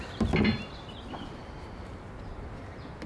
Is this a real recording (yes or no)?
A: yes